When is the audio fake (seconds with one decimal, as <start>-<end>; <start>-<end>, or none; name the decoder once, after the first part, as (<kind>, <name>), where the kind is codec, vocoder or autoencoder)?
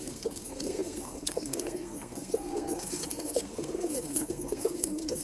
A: 0.0-5.2 (codec, SNAC)